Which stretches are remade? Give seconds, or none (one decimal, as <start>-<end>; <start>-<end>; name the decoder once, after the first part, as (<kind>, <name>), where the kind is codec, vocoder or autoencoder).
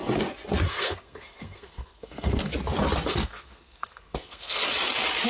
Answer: 0.7-2.5 (codec, SNAC); 3.1-4.6